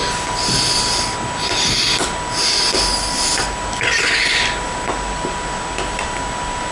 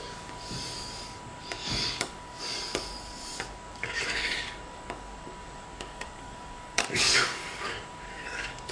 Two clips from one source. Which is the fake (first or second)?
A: second